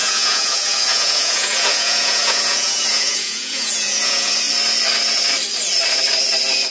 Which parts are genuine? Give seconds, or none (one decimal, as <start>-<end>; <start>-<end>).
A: 4.3-6.7